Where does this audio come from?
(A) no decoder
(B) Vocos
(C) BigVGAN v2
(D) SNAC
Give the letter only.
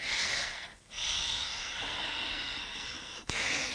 D